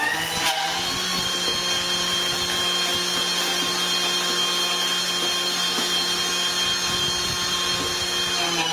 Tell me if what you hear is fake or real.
real